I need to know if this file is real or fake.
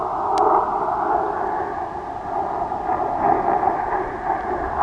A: real